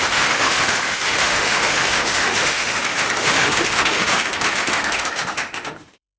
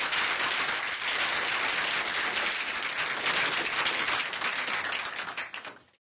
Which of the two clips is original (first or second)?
second